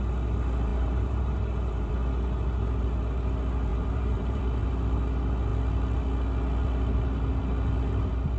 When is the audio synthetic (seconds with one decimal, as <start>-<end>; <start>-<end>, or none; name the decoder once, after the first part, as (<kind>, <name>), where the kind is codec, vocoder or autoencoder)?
0.7-1.9 (vocoder, BigVGAN v2); 3.7-4.4